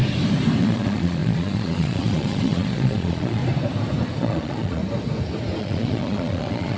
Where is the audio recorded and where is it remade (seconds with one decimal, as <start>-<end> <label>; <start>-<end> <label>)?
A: 0.0-0.6 recorded; 0.6-3.4 remade; 3.4-4.2 recorded; 4.2-4.8 remade; 4.8-5.6 recorded; 5.6-6.8 remade